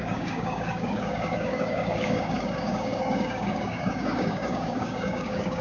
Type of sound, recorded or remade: remade